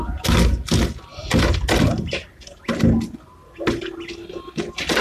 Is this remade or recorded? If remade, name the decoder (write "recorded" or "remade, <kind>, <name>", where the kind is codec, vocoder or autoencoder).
recorded